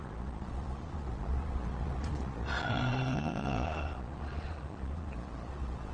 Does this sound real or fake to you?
fake